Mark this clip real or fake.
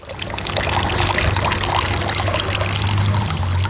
real